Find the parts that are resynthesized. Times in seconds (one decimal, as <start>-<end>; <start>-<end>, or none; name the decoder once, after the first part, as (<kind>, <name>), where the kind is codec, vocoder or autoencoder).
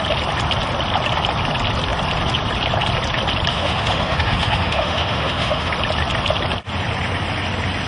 3.5-5.7 (autoencoder, DAC-VAE)